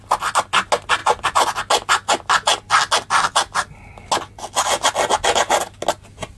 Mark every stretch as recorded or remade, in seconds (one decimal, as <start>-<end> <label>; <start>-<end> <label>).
0.0-6.4 recorded